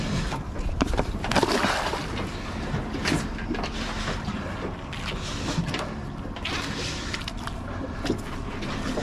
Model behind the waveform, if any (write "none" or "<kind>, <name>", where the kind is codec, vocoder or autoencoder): none